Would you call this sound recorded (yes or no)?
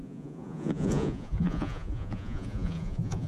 no